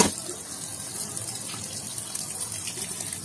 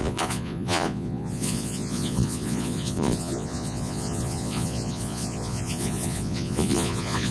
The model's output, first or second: second